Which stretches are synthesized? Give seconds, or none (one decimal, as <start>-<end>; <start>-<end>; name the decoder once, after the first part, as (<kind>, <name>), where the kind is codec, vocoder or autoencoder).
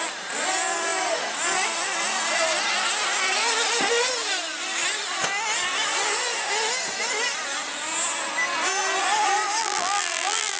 9.6-10.6 (vocoder, BigVGAN v2)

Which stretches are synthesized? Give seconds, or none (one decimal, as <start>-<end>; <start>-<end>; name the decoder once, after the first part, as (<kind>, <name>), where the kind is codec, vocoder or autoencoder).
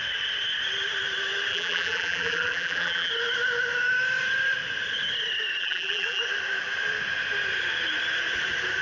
1.5-3.1 (vocoder, BigVGAN v2); 5.6-6.2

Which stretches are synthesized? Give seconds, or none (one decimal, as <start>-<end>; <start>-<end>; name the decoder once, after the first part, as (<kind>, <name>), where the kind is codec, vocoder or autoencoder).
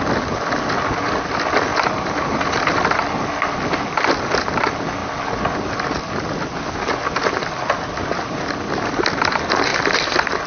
1.7-3.3 (vocoder, BigVGAN v2); 9.7-10.5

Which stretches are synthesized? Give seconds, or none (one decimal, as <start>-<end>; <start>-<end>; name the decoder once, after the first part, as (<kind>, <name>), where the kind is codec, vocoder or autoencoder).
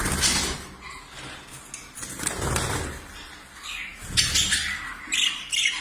0.0-0.7 (vocoder, BigVGAN v2); 3.9-5.8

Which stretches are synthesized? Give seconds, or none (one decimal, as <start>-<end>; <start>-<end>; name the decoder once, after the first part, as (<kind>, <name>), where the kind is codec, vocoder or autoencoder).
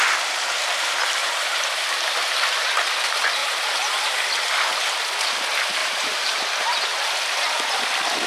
1.2-2.3 (vocoder, BigVGAN v2); 3.4-4.1; 5.8-6.4